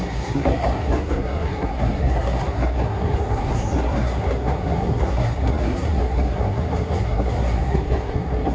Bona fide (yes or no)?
no